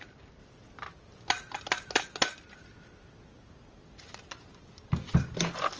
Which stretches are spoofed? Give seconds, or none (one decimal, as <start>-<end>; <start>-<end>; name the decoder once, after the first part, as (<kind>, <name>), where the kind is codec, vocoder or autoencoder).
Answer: none